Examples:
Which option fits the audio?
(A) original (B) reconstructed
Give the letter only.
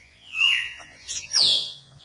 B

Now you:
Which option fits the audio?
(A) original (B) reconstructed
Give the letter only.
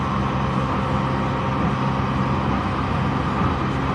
A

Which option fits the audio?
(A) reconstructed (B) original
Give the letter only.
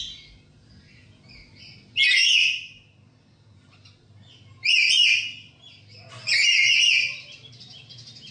B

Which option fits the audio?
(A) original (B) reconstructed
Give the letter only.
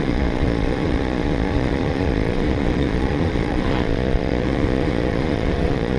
B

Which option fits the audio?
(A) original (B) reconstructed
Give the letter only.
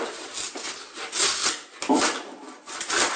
A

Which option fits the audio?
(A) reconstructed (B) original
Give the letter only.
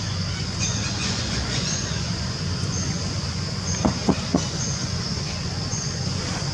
A